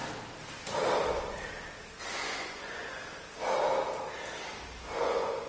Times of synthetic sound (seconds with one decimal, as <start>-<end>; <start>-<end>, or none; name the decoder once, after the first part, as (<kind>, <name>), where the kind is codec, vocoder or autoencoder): 2.0-3.0 (vocoder, Vocos); 5.0-5.5